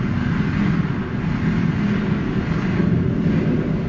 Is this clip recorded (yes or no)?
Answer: yes